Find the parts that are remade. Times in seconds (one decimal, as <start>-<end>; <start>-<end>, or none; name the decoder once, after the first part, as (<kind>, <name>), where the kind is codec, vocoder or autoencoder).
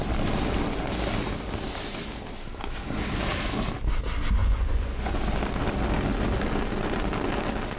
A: 4.4-5.1 (vocoder, Vocos)